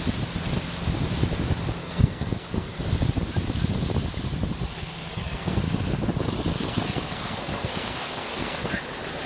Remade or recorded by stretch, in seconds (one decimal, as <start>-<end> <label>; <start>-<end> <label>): 0.0-1.8 recorded; 1.8-2.8 remade; 2.8-5.1 recorded; 5.1-5.6 remade; 5.6-6.5 recorded; 6.5-8.8 remade; 8.8-9.3 recorded